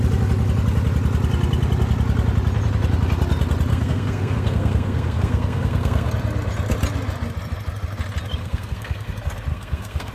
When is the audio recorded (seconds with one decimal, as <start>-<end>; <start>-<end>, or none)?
0.0-3.7; 6.1-8.4; 9.1-9.5